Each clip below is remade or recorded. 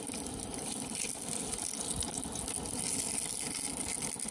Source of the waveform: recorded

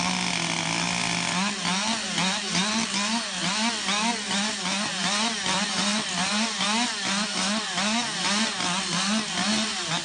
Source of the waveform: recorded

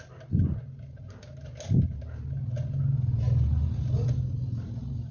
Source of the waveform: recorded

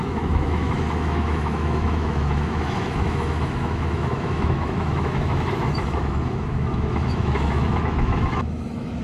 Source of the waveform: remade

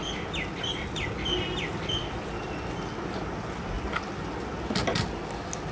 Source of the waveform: recorded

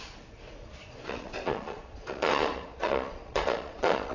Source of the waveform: remade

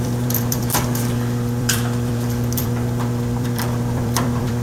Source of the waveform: remade